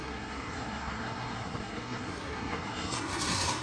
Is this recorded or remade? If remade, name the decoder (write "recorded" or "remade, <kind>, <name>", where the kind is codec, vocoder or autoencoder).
remade, codec, SNAC